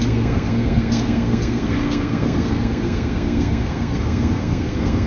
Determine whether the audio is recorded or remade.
remade